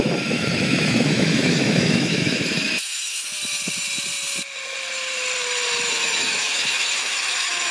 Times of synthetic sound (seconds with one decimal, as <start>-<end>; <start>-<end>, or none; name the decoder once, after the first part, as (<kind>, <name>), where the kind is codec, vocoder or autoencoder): 0.0-3.3 (autoencoder, DAC-VAE); 5.9-7.7

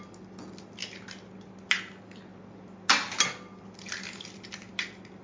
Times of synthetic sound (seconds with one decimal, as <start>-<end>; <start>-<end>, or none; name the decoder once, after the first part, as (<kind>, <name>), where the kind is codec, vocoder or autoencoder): none

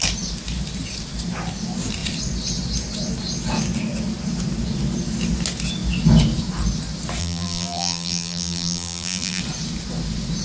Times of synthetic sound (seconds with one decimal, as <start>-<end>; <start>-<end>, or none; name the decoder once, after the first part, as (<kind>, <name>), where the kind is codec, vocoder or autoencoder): 7.2-9.4 (vocoder, BigVGAN v2)